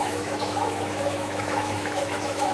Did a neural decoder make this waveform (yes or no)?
yes